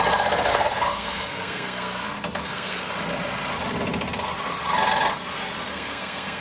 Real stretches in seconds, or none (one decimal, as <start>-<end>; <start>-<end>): 0.0-0.5; 2.9-5.7